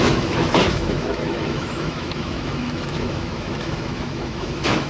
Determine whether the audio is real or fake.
fake